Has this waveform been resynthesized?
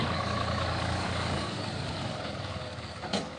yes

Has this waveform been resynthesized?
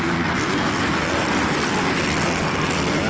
no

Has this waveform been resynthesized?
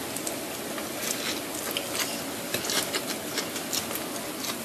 no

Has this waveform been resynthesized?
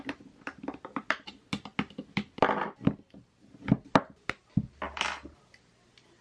no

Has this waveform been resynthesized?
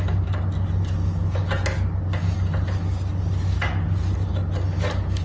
no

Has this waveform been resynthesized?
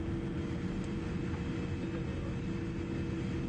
no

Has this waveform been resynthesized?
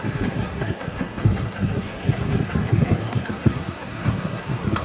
yes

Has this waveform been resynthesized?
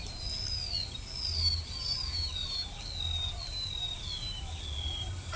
no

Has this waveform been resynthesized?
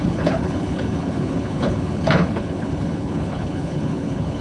yes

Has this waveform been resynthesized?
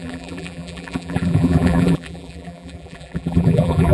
yes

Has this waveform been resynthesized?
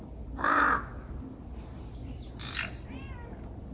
no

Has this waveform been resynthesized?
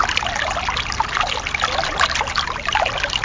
no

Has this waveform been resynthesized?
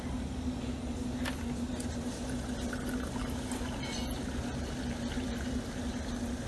no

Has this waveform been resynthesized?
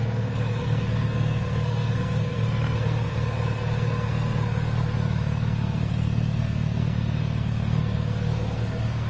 yes